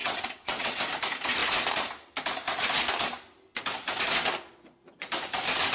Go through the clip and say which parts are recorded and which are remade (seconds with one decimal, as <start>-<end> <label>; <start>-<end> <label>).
0.0-0.8 remade; 0.8-5.7 recorded